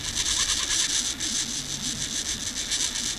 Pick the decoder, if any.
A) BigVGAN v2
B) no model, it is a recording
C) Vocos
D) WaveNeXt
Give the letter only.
B